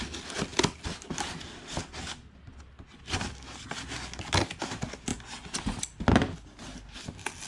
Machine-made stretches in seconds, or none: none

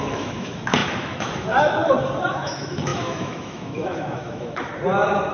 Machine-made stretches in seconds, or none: 0.0-1.8 (autoencoder, DAC-VAE); 2.3-4.7

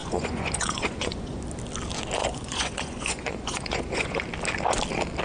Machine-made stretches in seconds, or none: 0.0-1.4 (vocoder, Vocos); 2.2-4.2

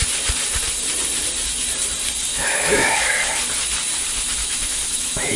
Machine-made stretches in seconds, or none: 2.3-3.4 (autoencoder, DAC-VAE); 4.4-5.4

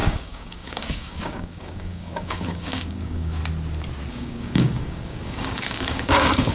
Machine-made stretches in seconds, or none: 0.0-3.4 (codec, DAC); 4.1-6.5